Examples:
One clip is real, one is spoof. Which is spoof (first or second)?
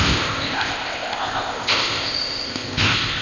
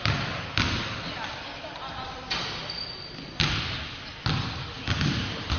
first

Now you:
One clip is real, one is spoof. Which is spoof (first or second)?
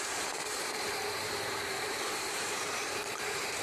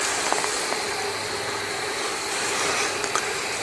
first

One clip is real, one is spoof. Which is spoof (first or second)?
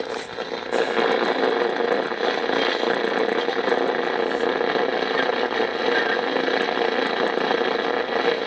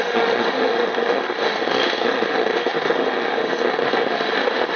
second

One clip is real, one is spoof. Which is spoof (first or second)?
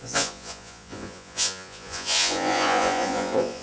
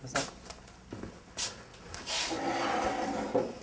first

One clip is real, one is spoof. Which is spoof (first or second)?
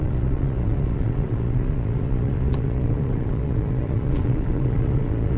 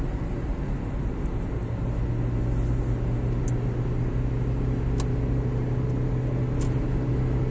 first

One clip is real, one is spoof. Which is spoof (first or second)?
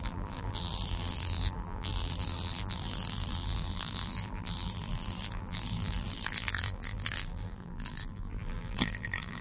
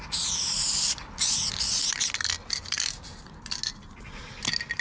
first